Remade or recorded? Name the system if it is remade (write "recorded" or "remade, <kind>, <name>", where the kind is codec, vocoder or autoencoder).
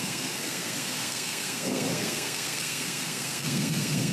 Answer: remade, codec, SNAC